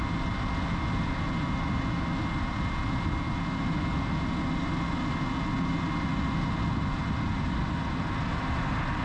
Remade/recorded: recorded